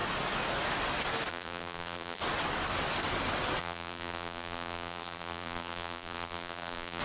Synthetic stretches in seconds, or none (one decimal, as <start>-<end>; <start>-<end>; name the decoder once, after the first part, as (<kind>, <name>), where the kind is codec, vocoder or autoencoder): 1.3-2.2 (vocoder, BigVGAN v2); 3.6-7.0